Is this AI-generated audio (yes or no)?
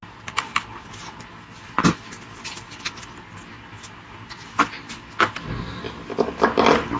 no